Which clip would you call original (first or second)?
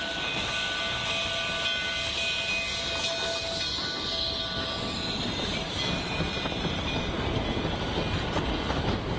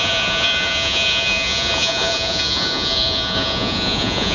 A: first